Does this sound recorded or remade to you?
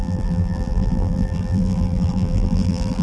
remade